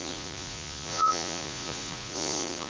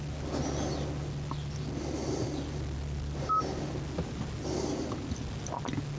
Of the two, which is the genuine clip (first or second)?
second